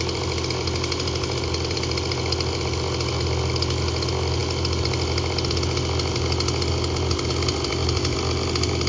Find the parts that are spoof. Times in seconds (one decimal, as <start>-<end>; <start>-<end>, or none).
none